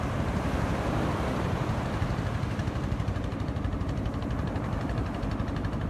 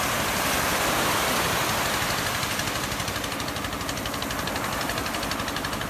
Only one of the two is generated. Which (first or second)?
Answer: first